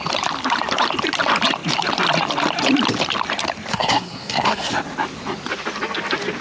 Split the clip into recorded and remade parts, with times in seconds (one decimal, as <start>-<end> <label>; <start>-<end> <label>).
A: 0.0-3.7 recorded; 3.7-4.7 remade; 4.7-6.4 recorded

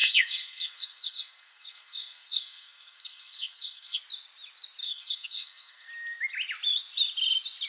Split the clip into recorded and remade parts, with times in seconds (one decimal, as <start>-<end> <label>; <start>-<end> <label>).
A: 0.0-4.0 remade; 4.0-4.8 recorded; 4.8-5.9 remade; 5.9-7.7 recorded

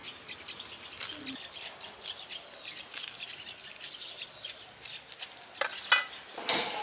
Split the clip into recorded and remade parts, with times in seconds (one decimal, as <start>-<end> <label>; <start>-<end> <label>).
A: 0.0-6.8 recorded

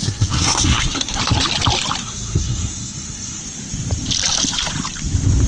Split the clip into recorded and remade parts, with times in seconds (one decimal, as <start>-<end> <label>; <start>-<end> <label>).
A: 0.0-1.2 remade; 1.2-2.0 recorded; 2.0-3.4 remade; 3.4-5.5 recorded

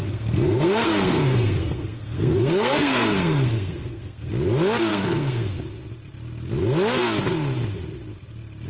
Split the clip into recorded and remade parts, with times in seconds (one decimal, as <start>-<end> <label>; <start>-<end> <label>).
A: 0.0-4.3 remade; 4.3-4.9 recorded; 4.9-5.6 remade; 5.6-8.7 recorded

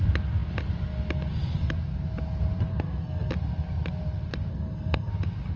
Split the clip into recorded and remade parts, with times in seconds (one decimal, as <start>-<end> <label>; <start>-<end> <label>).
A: 0.0-2.7 recorded; 2.7-3.3 remade; 3.3-4.5 recorded; 4.5-5.1 remade; 5.1-5.6 recorded

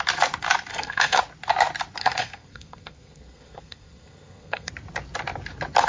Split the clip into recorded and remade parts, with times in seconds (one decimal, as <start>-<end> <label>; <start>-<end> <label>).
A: 0.0-0.7 recorded; 0.7-1.2 remade; 1.2-2.0 recorded; 2.0-4.7 remade; 4.7-5.9 recorded

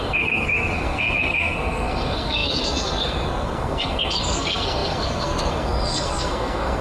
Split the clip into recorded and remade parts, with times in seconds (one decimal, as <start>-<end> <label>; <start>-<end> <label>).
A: 0.0-6.8 remade